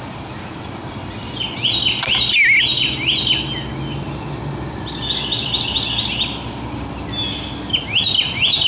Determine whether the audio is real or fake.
real